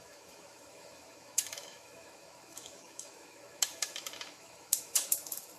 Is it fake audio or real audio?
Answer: fake